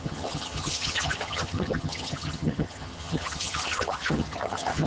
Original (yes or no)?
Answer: no